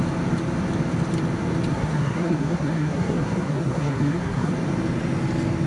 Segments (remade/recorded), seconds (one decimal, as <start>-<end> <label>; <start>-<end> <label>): 0.0-1.7 recorded; 1.7-4.5 remade; 4.5-5.7 recorded